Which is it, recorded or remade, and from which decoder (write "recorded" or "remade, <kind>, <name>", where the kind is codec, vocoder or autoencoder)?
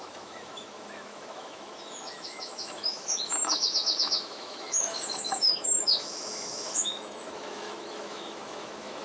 remade, autoencoder, DAC-VAE